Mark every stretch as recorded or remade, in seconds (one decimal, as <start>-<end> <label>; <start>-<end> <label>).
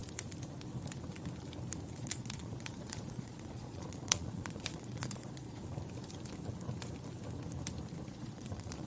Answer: 0.0-2.0 recorded; 2.0-5.6 remade; 5.6-8.1 recorded; 8.1-8.9 remade